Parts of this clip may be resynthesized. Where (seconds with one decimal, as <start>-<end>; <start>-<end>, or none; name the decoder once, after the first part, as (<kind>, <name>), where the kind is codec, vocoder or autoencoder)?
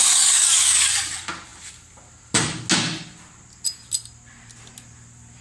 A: 0.0-1.1 (codec, DAC)